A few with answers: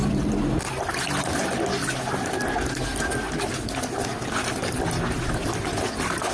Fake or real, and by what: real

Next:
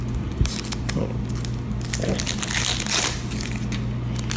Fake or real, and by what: real